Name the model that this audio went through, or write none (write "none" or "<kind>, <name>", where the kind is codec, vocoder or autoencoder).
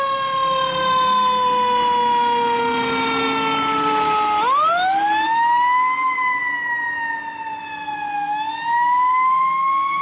none